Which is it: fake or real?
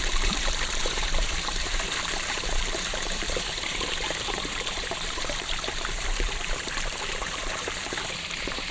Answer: fake